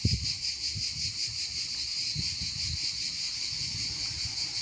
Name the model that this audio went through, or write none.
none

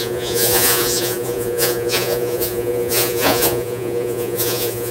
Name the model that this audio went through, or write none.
vocoder, Vocos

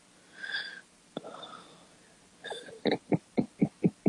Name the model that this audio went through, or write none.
none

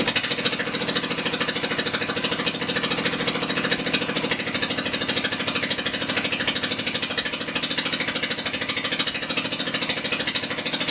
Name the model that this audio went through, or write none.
none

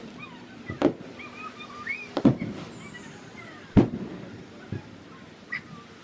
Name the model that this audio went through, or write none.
none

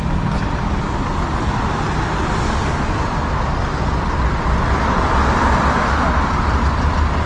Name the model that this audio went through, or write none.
none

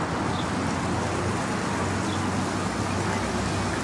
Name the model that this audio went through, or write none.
none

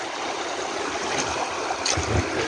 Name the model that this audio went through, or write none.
none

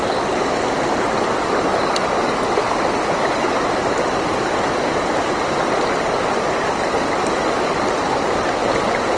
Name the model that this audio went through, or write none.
none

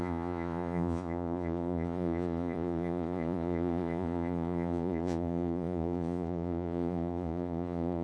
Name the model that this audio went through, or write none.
vocoder, Vocos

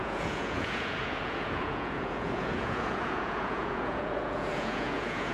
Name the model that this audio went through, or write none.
vocoder, Vocos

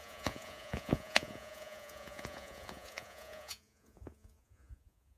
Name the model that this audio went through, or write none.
vocoder, Vocos